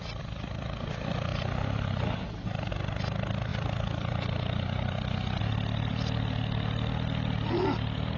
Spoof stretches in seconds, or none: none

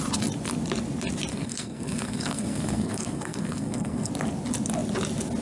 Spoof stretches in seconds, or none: 1.3-4.1

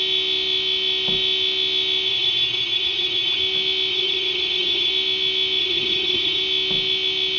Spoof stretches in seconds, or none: 2.1-3.4; 3.9-4.9; 5.6-6.4

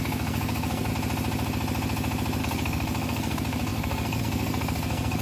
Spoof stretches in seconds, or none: 0.0-0.9; 2.4-5.2

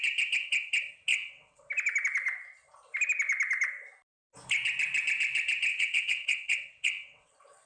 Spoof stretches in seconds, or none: 1.1-1.7; 5.7-7.3

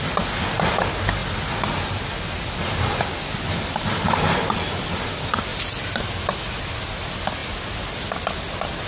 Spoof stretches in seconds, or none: 5.5-6.2